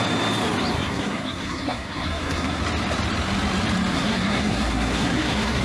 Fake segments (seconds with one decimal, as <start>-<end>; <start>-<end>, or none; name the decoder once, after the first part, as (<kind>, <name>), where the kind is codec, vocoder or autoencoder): 0.7-2.6 (codec, SNAC); 3.9-5.6